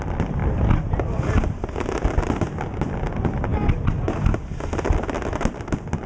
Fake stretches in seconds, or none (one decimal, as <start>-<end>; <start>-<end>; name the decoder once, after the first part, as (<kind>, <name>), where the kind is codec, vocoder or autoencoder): none